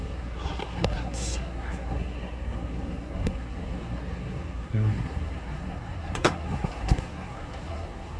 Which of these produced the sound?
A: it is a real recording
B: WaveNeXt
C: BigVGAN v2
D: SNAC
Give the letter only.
D